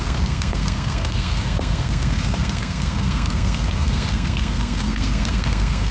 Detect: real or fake fake